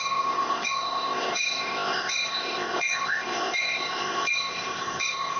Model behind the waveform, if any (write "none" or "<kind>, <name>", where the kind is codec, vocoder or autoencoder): codec, ZipCodec